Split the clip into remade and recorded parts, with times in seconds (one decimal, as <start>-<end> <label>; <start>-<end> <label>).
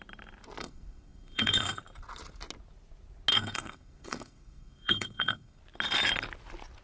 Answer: 0.0-0.6 recorded; 0.6-1.8 remade; 1.8-3.3 recorded; 3.3-5.6 remade; 5.6-6.8 recorded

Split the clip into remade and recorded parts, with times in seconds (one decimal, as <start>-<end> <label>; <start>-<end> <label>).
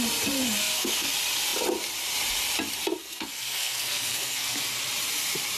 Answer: 0.0-0.6 recorded; 0.6-1.1 remade; 1.1-3.0 recorded; 3.0-4.6 remade; 4.6-5.6 recorded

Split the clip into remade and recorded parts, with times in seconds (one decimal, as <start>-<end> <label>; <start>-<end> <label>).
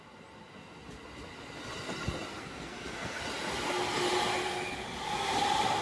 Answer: 0.0-2.3 recorded; 2.3-3.2 remade; 3.2-5.8 recorded